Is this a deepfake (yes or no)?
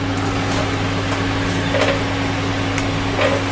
no